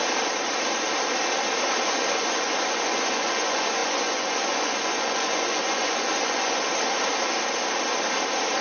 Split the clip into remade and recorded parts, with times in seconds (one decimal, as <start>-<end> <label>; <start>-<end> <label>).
0.0-1.9 recorded; 1.9-6.7 remade; 6.7-8.6 recorded